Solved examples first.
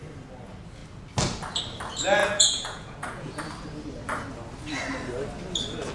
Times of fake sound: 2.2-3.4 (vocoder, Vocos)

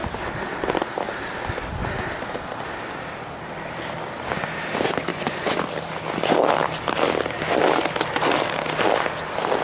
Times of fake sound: 5.1-5.6 (vocoder, Vocos)

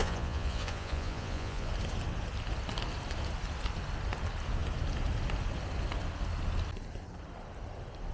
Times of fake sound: 0.0-1.7 (vocoder, Vocos)

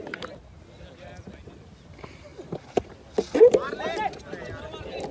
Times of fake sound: none